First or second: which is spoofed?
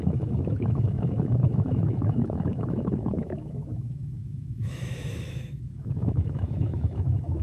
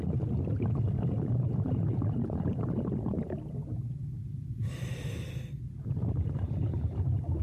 first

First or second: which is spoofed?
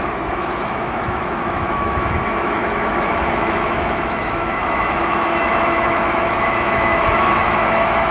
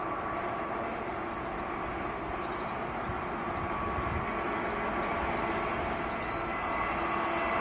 first